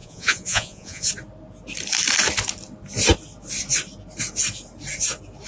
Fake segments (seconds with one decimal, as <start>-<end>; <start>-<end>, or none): 0.0-1.1